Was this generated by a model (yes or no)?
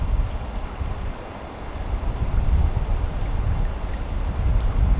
no